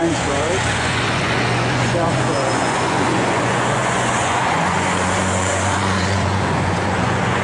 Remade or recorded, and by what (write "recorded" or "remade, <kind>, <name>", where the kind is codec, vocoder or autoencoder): remade, vocoder, Vocos